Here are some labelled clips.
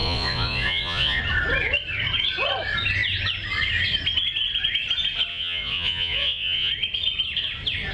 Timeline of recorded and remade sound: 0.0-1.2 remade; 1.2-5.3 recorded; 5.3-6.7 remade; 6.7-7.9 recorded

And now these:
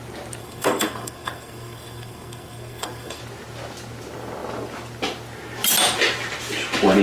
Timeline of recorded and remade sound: 0.0-0.4 recorded; 0.4-3.2 remade; 3.2-7.0 recorded

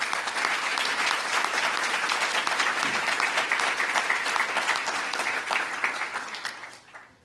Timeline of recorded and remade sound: 0.0-0.7 recorded; 0.7-3.0 remade; 3.0-7.2 recorded

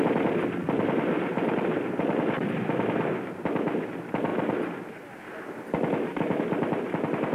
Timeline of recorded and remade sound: 0.0-7.3 recorded